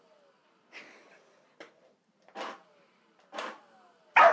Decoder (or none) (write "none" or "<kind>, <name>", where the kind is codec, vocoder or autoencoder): none